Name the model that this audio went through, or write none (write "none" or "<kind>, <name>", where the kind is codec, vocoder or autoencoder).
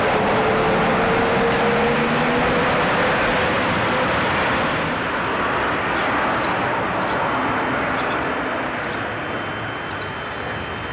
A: none